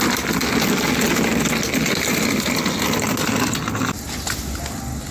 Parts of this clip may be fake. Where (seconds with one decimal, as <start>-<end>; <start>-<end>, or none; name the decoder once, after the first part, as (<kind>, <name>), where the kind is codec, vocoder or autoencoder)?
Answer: none